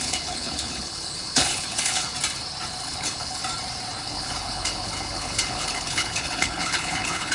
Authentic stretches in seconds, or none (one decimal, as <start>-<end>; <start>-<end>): 2.1-2.8; 3.4-4.0